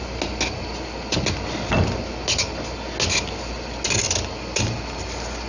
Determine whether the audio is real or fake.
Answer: real